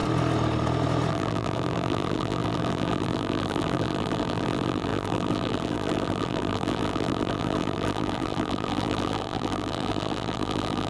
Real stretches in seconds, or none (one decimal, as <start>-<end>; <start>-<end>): 0.0-1.1